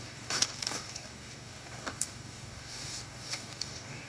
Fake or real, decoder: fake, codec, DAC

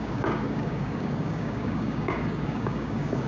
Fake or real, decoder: fake, codec, DAC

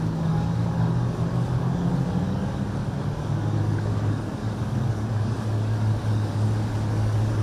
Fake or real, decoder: fake, codec, DAC